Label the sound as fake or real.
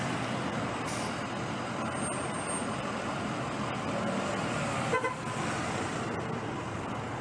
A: real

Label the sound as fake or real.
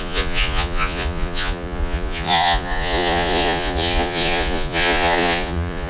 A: fake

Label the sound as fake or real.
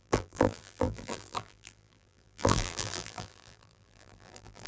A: fake